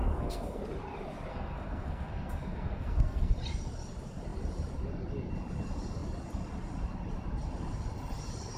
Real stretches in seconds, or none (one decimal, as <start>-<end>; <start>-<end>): 0.6-1.3; 3.3-8.6